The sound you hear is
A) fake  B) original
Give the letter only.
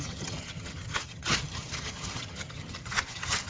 A